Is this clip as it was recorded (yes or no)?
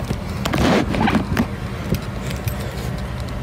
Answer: yes